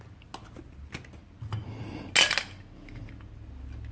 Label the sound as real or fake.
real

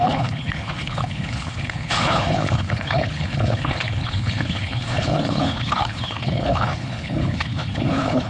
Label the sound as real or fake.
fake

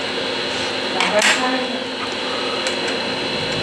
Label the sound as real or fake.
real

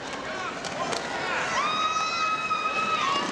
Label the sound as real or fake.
real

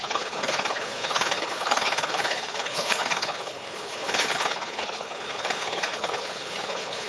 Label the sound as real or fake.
fake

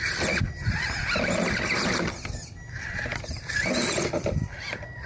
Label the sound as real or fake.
real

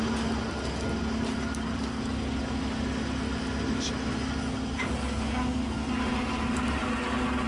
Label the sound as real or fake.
real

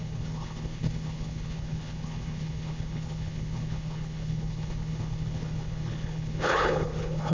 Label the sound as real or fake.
fake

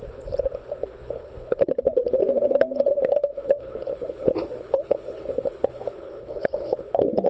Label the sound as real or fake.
fake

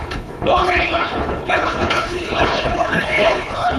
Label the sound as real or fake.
fake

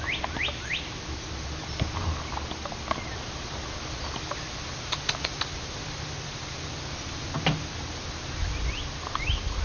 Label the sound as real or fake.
real